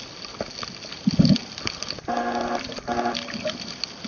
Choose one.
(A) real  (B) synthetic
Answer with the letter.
A